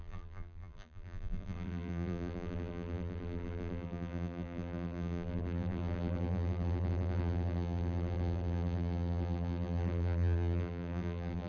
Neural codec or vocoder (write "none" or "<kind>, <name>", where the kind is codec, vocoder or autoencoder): vocoder, BigVGAN v2